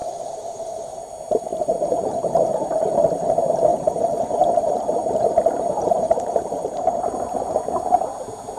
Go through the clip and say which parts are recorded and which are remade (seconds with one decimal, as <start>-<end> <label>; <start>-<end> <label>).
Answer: 0.0-1.1 remade; 1.1-1.5 recorded; 1.5-3.3 remade; 3.3-3.7 recorded; 3.7-7.6 remade; 7.6-8.6 recorded